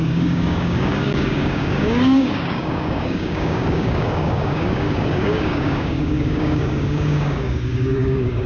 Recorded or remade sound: remade